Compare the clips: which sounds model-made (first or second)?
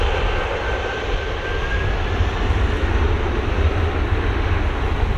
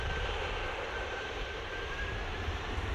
second